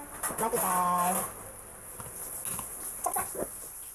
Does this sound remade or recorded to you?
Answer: recorded